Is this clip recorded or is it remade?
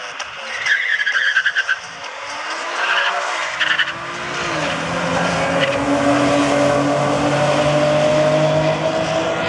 recorded